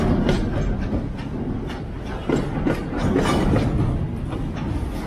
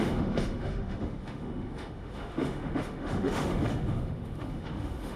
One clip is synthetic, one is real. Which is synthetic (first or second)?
second